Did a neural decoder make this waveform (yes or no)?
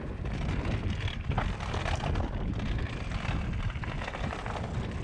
no